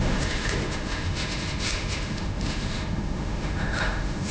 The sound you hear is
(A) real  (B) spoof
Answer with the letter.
B